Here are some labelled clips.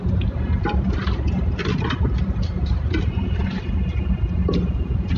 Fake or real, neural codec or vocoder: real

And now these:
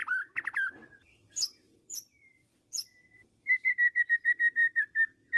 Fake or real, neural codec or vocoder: fake, vocoder, BigVGAN v2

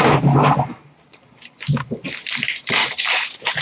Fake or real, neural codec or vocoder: real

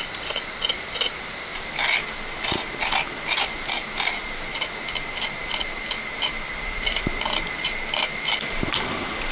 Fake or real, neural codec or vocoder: real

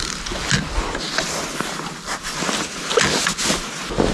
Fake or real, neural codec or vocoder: real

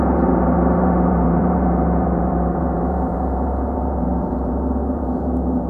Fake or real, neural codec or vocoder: fake, vocoder, BigVGAN v2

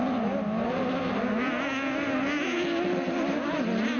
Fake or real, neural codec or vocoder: real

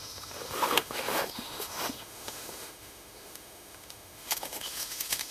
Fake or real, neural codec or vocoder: fake, autoencoder, DAC-VAE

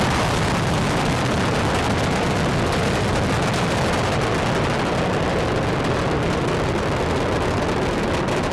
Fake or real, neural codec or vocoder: real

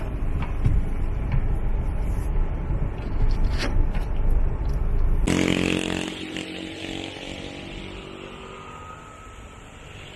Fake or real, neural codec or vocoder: real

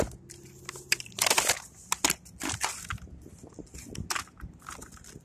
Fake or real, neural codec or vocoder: real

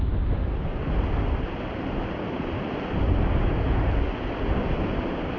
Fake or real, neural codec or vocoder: real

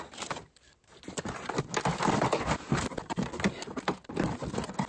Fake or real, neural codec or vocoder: real